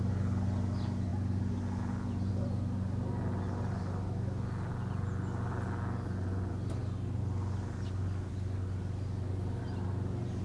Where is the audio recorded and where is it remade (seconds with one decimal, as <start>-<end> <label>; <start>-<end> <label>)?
0.0-10.4 recorded